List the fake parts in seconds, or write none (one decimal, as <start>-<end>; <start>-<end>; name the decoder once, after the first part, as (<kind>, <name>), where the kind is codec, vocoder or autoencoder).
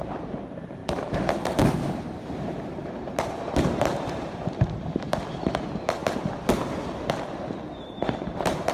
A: 0.0-6.0 (vocoder, BigVGAN v2); 7.8-8.7